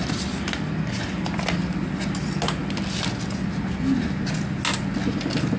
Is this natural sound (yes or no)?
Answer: yes